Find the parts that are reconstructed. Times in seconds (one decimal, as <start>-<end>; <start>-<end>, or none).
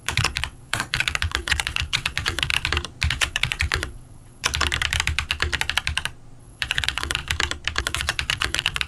0.0-2.5; 3.1-4.5; 6.4-7.2; 7.8-8.9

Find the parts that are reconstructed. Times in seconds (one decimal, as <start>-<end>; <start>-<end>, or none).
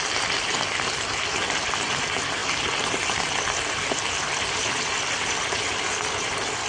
none